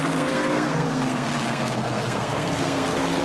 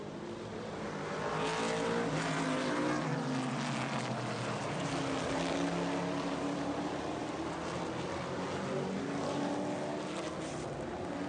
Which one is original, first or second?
second